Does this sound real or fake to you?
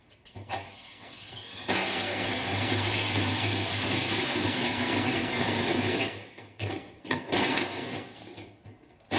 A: fake